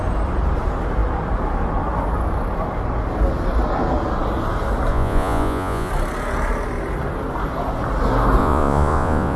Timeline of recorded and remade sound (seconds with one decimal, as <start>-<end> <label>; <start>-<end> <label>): 0.0-4.9 recorded; 4.9-5.9 remade; 5.9-8.4 recorded; 8.4-9.4 remade